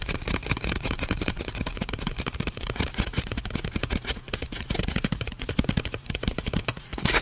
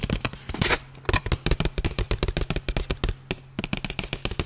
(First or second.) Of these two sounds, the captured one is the second